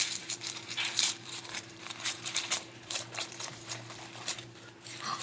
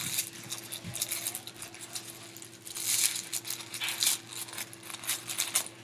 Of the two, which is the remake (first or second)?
first